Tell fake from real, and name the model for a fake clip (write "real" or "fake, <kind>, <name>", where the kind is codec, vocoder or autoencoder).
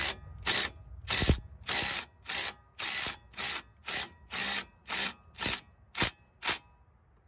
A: real